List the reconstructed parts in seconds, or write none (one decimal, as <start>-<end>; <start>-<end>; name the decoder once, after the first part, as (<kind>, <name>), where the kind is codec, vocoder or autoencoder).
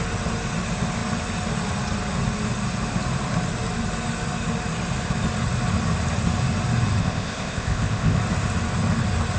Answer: 7.0-8.2 (codec, ZipCodec)